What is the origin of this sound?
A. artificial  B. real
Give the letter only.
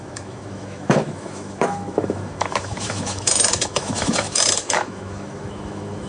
A